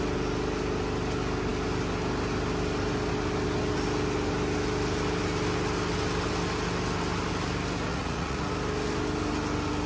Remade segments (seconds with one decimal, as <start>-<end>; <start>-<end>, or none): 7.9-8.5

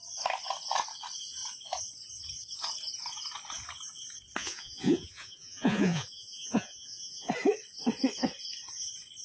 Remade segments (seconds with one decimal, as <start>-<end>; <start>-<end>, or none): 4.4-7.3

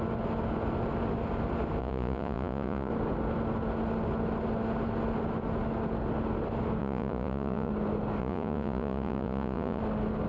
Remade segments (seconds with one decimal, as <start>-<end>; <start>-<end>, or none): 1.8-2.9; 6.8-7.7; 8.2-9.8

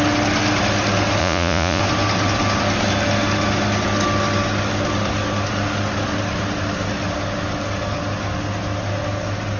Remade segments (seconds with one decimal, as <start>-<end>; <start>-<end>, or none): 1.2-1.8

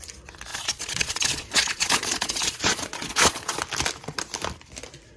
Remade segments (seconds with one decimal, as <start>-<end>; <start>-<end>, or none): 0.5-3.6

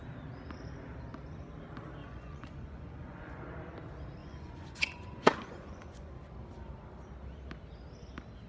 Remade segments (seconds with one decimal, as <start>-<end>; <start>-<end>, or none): 2.0-3.4; 4.2-6.1

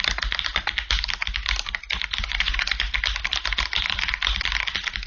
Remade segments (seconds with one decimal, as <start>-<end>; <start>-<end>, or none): 2.2-2.8

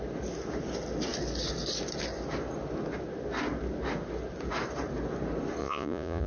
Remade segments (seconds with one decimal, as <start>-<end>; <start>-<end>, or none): 5.6-6.3